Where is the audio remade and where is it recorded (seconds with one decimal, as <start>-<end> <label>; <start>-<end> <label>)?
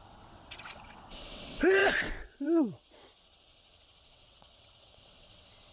0.0-5.7 remade